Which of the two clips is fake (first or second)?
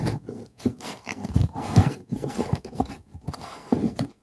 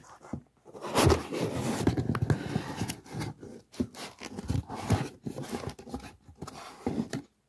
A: first